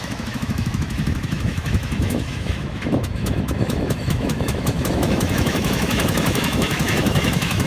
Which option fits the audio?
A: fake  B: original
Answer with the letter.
A